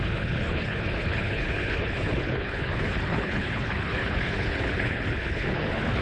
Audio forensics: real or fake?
fake